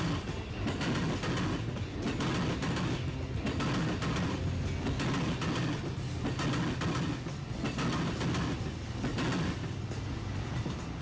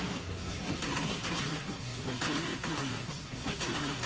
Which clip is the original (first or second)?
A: first